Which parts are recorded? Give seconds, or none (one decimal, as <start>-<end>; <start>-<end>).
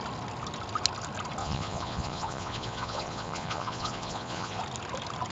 0.0-1.4; 4.6-5.3